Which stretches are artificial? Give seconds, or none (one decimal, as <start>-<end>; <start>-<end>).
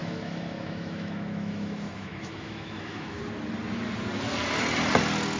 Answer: 0.0-3.2